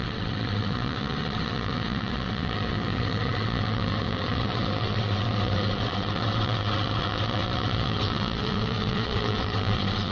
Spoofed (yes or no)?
yes